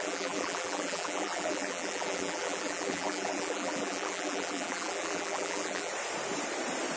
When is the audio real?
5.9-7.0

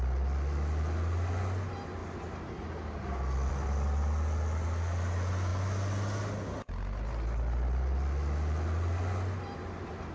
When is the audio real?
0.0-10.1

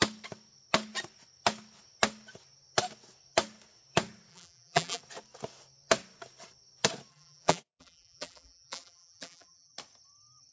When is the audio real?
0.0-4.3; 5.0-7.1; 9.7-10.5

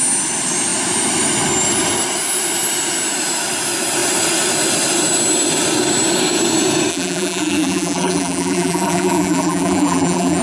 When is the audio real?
0.0-6.9

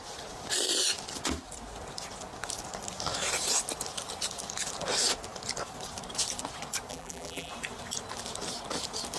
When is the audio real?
0.0-6.9; 7.5-9.2

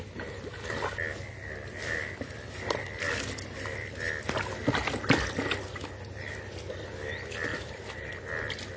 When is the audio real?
0.0-7.5; 8.1-8.8

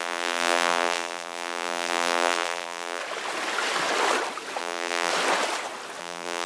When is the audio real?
3.0-4.6; 5.1-6.0

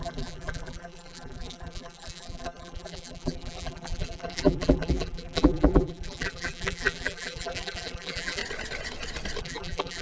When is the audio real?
8.4-9.4